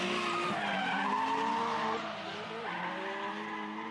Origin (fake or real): real